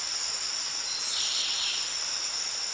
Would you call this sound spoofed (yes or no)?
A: no